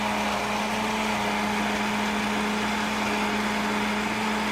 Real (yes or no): yes